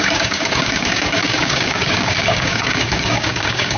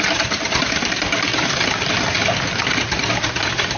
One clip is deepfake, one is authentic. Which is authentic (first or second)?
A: second